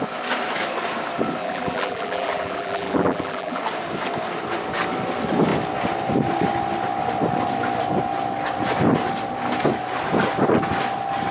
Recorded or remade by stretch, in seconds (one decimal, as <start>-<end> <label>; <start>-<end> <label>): 0.0-1.4 recorded; 1.4-3.6 remade; 3.6-11.3 recorded